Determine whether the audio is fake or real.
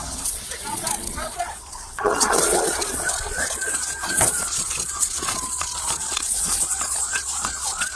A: fake